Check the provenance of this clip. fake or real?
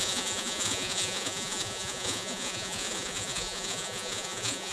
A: fake